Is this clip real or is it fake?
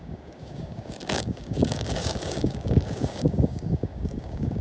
fake